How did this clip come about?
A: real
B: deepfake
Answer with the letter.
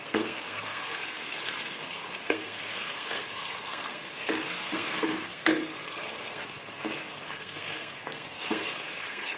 B